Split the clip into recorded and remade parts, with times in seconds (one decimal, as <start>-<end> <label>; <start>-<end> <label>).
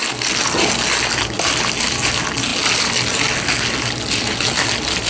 0.0-5.1 recorded